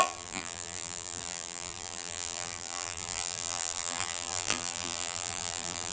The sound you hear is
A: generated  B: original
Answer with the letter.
A